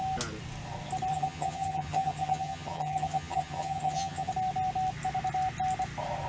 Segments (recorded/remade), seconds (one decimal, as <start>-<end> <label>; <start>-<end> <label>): 0.0-1.1 recorded; 1.1-4.3 remade; 4.3-6.3 recorded